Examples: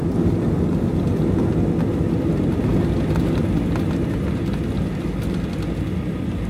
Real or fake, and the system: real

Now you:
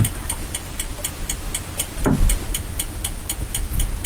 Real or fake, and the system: real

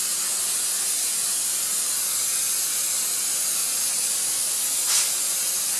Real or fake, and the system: real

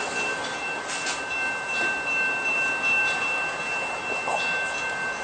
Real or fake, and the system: real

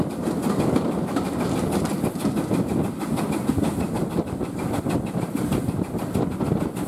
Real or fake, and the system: real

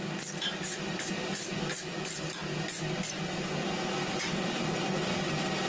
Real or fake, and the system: real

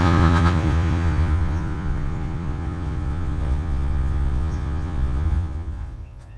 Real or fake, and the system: fake, vocoder, Vocos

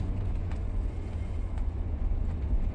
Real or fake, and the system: fake, vocoder, Vocos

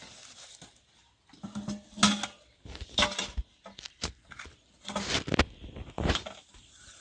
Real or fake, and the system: real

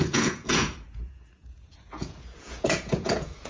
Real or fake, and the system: fake, vocoder, Vocos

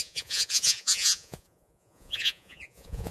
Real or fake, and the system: fake, vocoder, Vocos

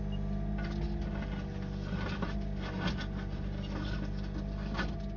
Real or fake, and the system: real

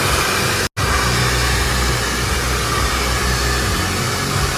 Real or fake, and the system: real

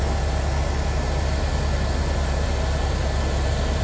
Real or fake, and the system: real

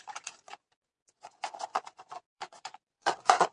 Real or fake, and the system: fake, vocoder, Vocos